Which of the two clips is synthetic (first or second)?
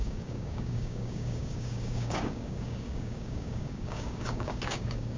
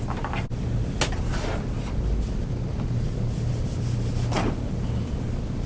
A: first